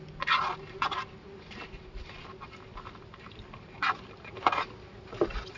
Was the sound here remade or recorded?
recorded